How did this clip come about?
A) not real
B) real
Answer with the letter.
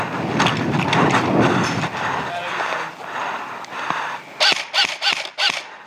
B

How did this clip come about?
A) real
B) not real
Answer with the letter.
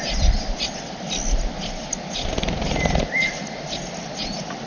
A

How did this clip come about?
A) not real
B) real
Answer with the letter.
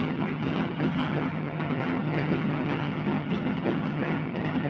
A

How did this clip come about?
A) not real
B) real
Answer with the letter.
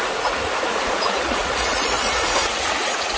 A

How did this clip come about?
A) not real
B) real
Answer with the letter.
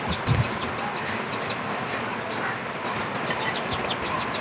B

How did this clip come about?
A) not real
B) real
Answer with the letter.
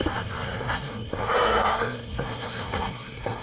A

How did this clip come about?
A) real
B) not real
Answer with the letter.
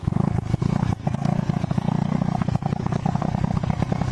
B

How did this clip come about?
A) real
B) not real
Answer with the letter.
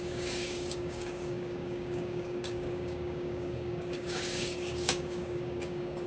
B